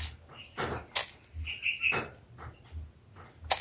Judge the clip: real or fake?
real